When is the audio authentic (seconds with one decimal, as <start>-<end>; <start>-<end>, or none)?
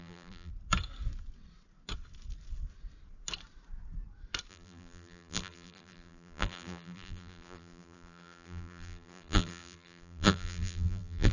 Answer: 0.5-4.5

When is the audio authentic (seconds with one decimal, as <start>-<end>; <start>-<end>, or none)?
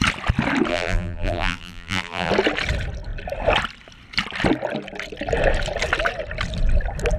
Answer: 0.0-0.7; 2.3-7.2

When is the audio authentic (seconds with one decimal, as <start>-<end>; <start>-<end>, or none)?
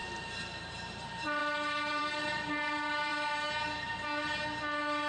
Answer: 0.0-0.7; 1.4-1.9; 3.1-5.1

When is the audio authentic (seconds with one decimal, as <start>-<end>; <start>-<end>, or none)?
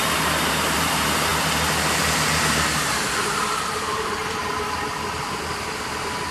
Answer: 1.3-3.0; 4.2-5.6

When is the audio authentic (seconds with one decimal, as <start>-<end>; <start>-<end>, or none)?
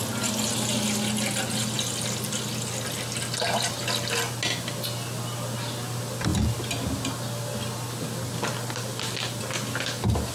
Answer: 0.0-10.3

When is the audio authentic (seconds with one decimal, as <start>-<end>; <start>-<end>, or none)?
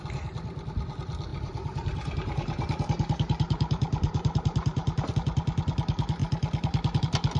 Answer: 0.0-1.3; 5.1-7.4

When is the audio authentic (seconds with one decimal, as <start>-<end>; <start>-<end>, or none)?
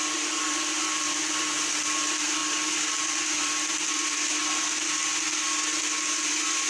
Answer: 4.4-6.2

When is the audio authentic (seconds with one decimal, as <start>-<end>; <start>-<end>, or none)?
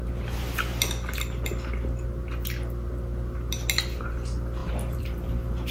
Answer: 0.0-4.6; 5.3-5.7